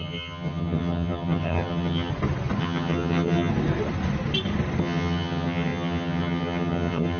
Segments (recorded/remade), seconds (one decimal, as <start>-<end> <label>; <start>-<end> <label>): 0.0-2.1 remade; 2.1-2.6 recorded; 2.6-3.5 remade; 3.5-4.8 recorded; 4.8-7.2 remade

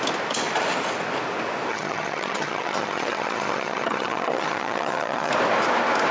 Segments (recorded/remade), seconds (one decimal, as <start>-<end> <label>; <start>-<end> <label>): 0.0-1.7 recorded; 1.7-5.3 remade; 5.3-6.1 recorded

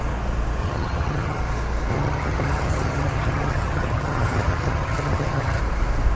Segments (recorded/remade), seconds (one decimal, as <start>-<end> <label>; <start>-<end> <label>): 0.0-0.6 recorded; 0.6-1.4 remade; 1.4-1.9 recorded; 1.9-5.6 remade; 5.6-6.2 recorded

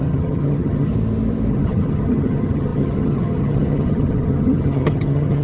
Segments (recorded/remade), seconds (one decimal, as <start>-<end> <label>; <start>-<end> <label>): 0.0-0.9 remade; 0.9-1.5 recorded; 1.5-5.4 remade

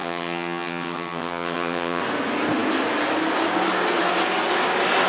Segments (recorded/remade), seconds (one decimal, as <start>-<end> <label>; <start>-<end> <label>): 0.0-2.0 remade; 2.0-5.1 recorded

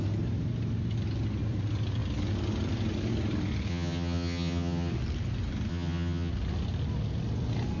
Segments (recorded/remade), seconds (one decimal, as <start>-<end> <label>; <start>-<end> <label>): 0.0-3.7 recorded; 3.7-4.9 remade; 4.9-5.7 recorded; 5.7-6.3 remade; 6.3-7.8 recorded

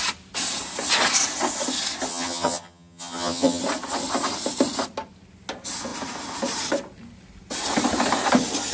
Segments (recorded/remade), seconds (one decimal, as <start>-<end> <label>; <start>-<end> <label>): 0.0-2.1 recorded; 2.1-3.6 remade; 3.6-8.7 recorded